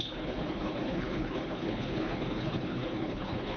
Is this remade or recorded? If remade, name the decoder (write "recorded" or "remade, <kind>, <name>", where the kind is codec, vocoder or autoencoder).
remade, codec, HILCodec